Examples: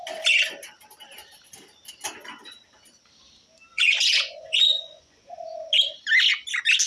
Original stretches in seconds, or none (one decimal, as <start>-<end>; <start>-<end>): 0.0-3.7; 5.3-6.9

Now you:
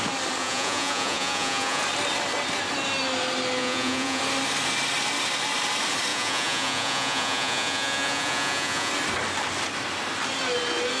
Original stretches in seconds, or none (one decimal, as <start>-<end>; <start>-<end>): 0.0-0.4; 1.8-3.6; 4.2-6.1; 8.9-11.0

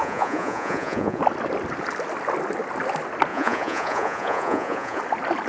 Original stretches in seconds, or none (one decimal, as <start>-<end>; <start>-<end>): 1.2-3.3; 5.0-5.5

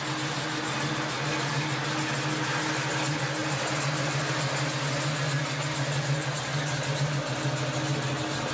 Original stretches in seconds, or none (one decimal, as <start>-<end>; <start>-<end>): 0.0-8.5

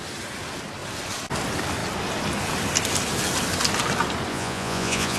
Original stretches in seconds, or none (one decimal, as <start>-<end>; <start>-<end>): 0.0-4.3

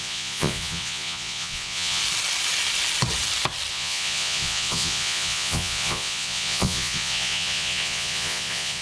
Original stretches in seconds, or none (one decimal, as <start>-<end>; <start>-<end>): 2.0-3.7